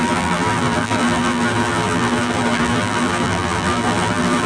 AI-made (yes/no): yes